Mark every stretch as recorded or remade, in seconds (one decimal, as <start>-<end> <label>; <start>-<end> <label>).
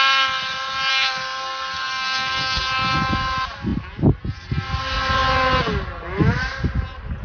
0.0-0.9 recorded; 0.9-2.6 remade; 2.6-7.2 recorded